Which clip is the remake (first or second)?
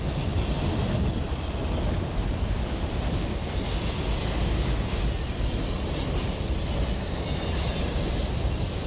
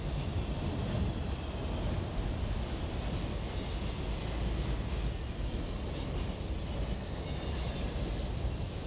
first